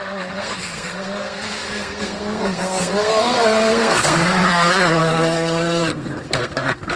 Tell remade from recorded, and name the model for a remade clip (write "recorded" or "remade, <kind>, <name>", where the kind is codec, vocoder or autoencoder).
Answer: remade, codec, SNAC